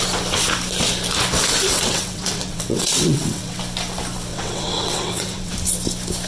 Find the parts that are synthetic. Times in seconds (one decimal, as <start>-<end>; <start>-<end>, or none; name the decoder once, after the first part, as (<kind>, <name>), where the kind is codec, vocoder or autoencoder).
1.7-3.6 (vocoder, WaveNeXt); 4.3-5.5